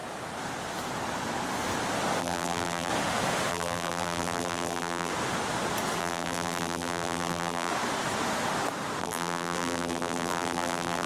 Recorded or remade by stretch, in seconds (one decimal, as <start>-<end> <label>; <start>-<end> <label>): 0.0-2.2 recorded; 2.2-2.9 remade; 2.9-3.5 recorded; 3.5-5.1 remade; 5.1-6.0 recorded; 6.0-7.7 remade; 7.7-9.0 recorded; 9.0-11.1 remade